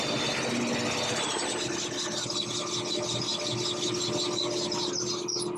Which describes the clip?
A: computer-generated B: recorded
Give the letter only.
B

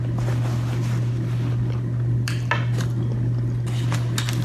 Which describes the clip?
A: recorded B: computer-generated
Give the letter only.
A